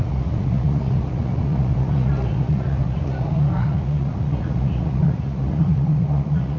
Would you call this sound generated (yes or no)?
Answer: yes